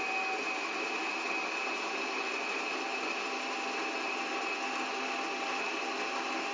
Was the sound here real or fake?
real